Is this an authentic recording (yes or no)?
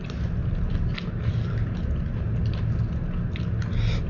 yes